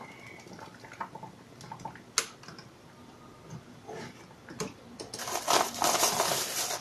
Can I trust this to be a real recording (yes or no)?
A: yes